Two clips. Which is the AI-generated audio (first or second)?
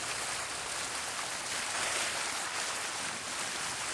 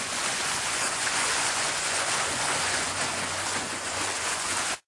second